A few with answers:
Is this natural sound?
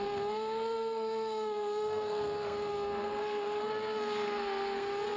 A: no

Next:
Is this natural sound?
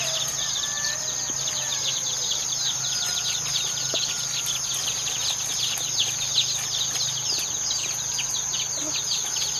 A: yes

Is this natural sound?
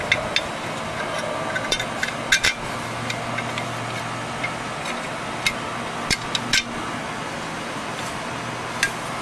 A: yes